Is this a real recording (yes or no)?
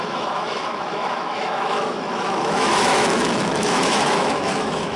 no